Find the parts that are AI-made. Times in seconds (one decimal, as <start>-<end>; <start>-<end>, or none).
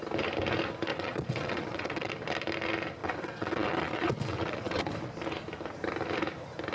0.9-2.1; 3.0-4.8